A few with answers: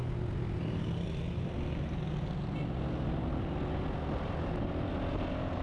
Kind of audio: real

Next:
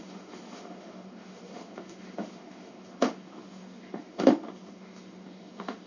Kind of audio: fake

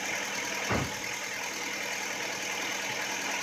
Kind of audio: real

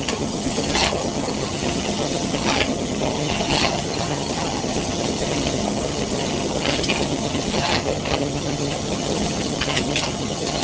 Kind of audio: fake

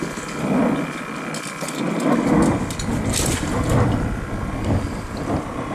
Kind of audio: real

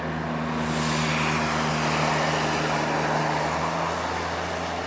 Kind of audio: real